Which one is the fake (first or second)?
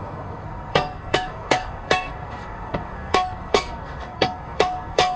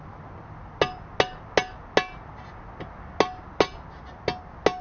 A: first